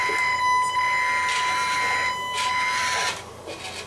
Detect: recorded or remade recorded